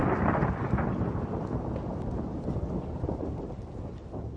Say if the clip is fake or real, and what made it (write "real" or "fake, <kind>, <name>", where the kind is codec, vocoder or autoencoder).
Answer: real